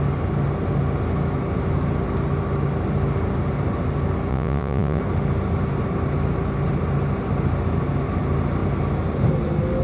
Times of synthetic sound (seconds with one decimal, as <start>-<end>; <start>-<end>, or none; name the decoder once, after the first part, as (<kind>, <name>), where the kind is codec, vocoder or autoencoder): 4.3-5.0 (vocoder, Vocos)